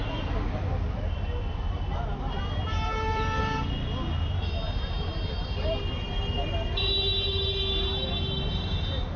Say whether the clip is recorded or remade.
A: recorded